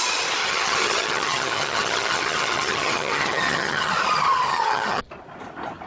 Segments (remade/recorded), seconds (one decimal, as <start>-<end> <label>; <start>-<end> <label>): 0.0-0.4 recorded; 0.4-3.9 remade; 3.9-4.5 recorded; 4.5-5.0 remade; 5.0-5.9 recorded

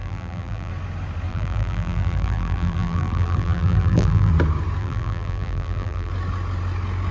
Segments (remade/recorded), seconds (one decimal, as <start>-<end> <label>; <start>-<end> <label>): 0.0-0.7 remade; 0.7-1.3 recorded; 1.3-4.3 remade; 4.3-4.8 recorded; 4.8-6.1 remade; 6.1-7.1 recorded

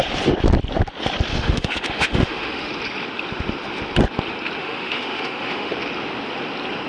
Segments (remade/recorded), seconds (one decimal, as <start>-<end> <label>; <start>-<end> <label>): 0.0-1.3 recorded; 1.3-2.7 remade; 2.7-4.6 recorded; 4.6-5.7 remade; 5.7-6.9 recorded

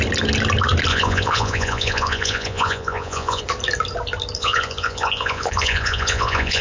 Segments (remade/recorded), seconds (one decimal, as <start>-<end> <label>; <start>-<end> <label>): 0.0-0.9 recorded; 0.9-3.4 remade; 3.4-4.4 recorded; 4.4-6.6 remade